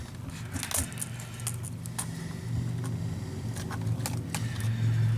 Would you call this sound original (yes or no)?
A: yes